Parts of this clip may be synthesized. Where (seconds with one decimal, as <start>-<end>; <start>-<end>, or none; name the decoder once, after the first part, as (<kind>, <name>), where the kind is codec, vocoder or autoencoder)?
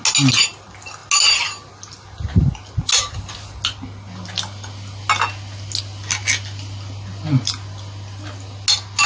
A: none